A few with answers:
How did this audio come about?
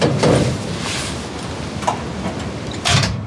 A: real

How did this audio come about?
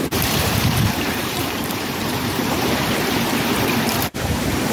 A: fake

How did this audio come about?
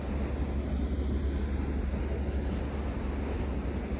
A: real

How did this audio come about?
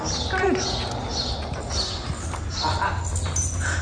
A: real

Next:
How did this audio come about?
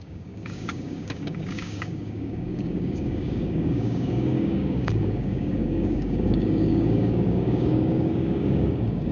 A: fake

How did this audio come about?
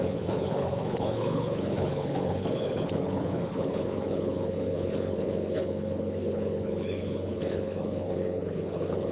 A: fake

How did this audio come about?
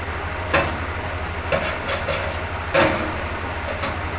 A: real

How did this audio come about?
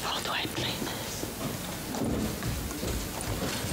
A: real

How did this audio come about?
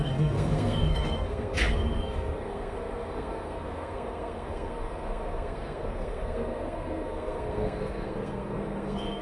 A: fake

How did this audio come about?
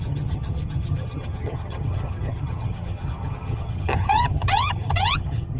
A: fake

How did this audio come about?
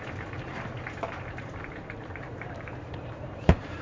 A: fake